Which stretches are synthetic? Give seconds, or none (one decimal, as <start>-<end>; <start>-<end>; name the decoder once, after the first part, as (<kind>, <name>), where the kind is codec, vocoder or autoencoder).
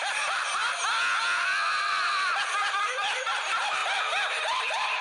0.0-0.6 (vocoder, BigVGAN v2); 2.8-3.8; 4.4-5.0